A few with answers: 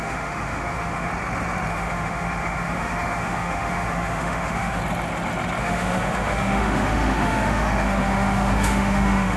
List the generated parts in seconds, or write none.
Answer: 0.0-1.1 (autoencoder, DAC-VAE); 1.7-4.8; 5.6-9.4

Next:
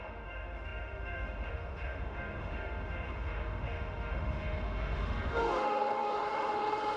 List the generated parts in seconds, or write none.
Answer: 0.0-7.0 (autoencoder, DAC-VAE)

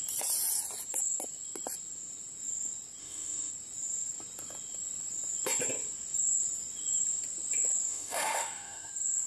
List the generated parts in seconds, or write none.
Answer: 3.0-3.5 (autoencoder, DAC-VAE); 7.9-8.9